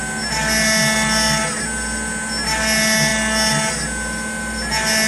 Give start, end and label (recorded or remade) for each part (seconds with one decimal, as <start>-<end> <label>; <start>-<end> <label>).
0.0-5.1 recorded